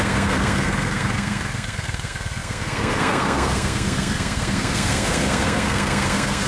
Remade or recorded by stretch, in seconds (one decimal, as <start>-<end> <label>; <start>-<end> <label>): 0.0-6.5 remade